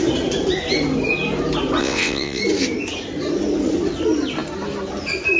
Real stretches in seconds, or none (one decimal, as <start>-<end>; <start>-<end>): 0.0-1.8; 2.4-5.4